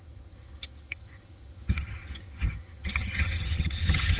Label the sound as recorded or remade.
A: remade